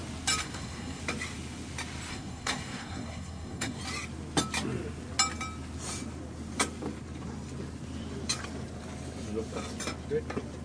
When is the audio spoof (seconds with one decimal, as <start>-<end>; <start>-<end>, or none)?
0.4-1.0; 2.1-3.8